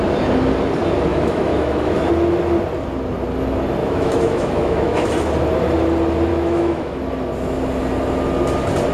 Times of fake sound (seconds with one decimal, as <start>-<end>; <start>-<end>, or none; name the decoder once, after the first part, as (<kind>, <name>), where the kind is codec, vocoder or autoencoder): 1.1-2.1 (autoencoder, DAC-VAE); 3.8-5.1; 6.3-7.0

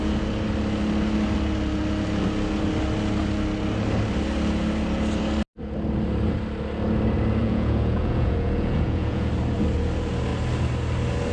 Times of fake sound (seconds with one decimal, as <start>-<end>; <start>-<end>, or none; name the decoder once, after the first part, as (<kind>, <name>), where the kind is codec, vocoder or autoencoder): 7.4-9.3 (vocoder, Vocos)

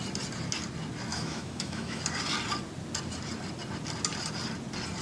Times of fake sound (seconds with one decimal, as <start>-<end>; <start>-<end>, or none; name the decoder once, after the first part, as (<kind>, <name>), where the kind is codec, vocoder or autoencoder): 1.1-2.0 (autoencoder, DAC-VAE)

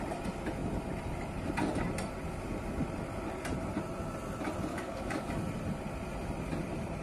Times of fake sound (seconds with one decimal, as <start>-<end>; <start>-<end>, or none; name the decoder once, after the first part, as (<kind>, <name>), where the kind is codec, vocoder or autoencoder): 4.7-5.3 (codec, DAC)

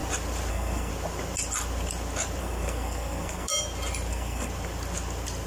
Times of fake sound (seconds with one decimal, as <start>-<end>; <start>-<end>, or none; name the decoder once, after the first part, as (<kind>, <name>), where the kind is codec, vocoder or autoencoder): 0.5-0.9 (codec, SNAC); 2.4-3.5; 4.1-4.5

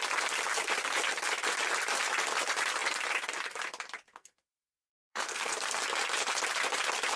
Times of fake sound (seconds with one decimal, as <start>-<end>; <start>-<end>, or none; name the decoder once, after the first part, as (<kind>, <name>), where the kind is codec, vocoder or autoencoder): 4.1-5.8 (codec, SNAC)

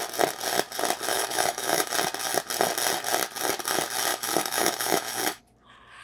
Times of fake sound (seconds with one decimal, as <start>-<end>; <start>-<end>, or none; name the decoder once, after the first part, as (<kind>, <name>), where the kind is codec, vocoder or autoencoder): 1.1-1.9 (autoencoder, DAC-VAE); 4.1-5.4